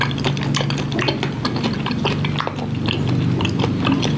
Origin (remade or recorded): recorded